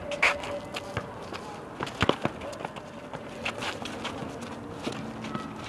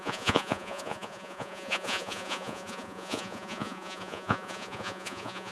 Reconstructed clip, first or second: second